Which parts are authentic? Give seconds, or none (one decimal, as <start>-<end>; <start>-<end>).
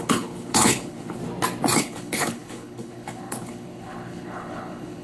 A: 1.2-1.8